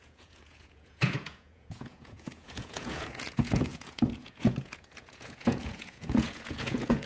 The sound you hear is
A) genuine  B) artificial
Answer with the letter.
B